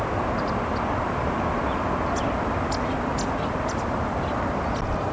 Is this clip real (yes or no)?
yes